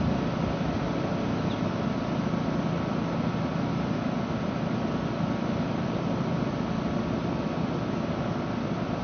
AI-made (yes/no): no